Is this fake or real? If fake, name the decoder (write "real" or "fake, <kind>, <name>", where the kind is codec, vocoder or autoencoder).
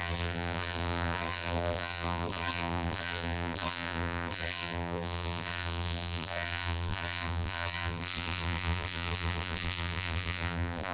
fake, vocoder, BigVGAN v2